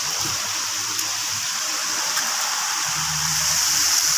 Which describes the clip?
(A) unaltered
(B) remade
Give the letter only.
B